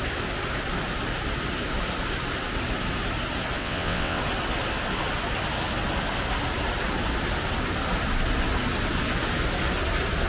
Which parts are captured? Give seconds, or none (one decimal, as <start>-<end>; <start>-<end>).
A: 0.0-3.6; 4.2-10.3